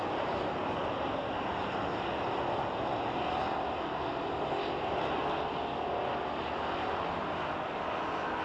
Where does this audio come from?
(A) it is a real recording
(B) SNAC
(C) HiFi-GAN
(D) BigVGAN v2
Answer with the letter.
A